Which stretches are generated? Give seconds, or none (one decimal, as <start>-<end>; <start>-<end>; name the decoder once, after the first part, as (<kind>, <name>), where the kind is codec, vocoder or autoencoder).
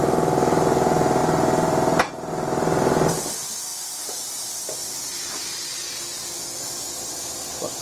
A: none